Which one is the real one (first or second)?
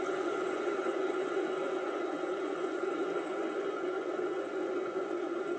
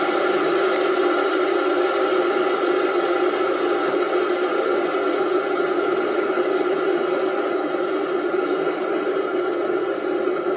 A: second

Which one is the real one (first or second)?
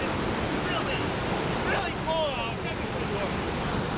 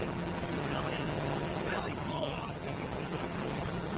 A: first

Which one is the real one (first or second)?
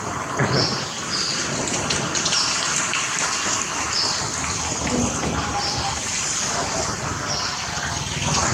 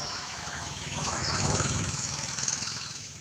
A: first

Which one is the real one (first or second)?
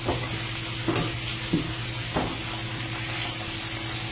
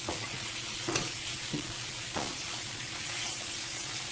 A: first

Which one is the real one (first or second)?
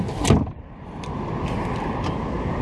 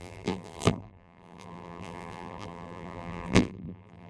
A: first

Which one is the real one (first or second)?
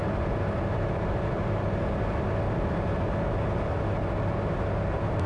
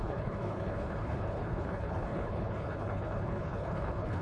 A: first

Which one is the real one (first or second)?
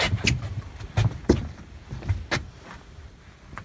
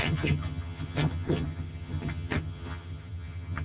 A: first